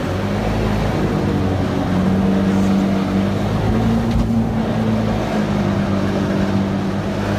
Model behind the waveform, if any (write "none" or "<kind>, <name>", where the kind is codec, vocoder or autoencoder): none